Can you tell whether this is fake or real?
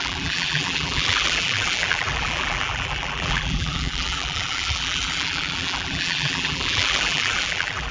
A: fake